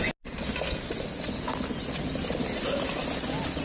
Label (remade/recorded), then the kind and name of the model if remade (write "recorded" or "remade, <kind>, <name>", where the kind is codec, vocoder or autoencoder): recorded